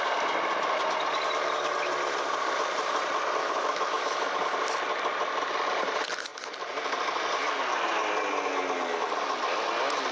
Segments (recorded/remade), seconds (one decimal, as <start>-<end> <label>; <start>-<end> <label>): 0.0-3.4 recorded; 3.4-4.4 remade; 4.4-10.1 recorded